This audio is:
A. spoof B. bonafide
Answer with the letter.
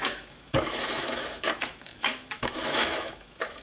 A